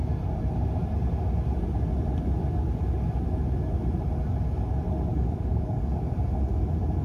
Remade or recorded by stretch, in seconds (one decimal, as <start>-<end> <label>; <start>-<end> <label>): 0.0-5.1 recorded; 5.1-5.8 remade; 5.8-7.0 recorded

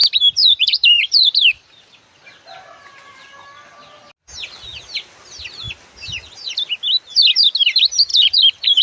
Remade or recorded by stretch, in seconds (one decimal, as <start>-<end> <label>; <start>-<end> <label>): 0.0-2.0 remade; 2.0-8.1 recorded; 8.1-8.8 remade

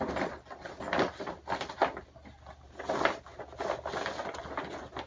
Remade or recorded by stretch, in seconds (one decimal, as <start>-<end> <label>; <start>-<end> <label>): 0.0-5.1 recorded

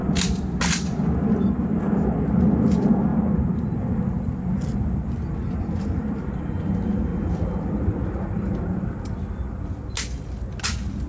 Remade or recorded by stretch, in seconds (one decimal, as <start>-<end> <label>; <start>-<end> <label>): 0.0-11.1 recorded

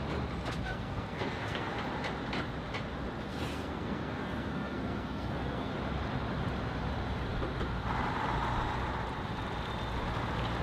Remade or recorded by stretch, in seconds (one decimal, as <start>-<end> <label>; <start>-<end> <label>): 0.0-0.7 recorded; 0.7-1.7 remade; 1.7-3.3 recorded; 3.3-5.7 remade; 5.7-10.6 recorded